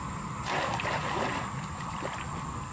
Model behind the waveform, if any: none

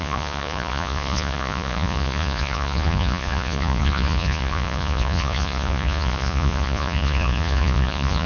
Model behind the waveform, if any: vocoder, Vocos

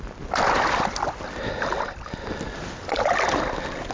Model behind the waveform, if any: none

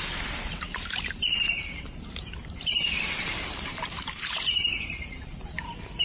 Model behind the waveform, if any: vocoder, BigVGAN v2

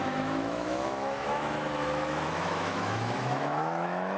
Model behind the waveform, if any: autoencoder, DAC-VAE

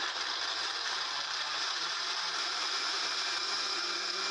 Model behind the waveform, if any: vocoder, BigVGAN v2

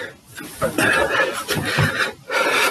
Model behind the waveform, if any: none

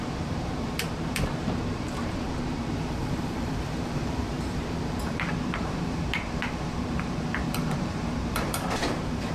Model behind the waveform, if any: vocoder, BigVGAN v2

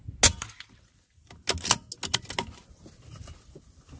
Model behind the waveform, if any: none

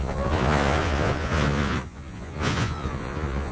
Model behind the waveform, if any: vocoder, Vocos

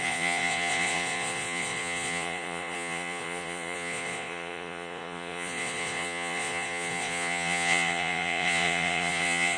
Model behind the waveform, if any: vocoder, Vocos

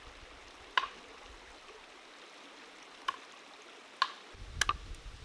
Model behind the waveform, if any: none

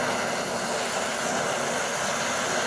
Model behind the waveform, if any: none